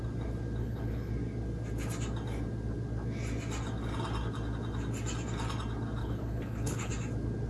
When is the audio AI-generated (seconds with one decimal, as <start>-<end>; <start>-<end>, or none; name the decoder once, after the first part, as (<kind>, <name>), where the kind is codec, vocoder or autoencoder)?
0.6-1.1 (codec, HILCodec); 6.0-6.9